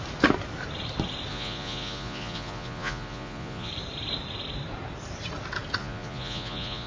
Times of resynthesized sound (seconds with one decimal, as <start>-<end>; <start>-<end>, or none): 1.3-3.7; 5.8-6.9